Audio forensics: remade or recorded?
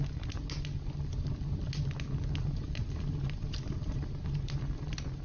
recorded